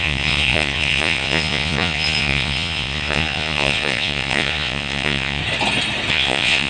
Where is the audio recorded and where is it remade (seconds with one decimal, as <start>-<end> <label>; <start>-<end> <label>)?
0.0-5.4 remade; 5.4-6.1 recorded; 6.1-6.7 remade